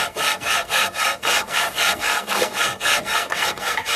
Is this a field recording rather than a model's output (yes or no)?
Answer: no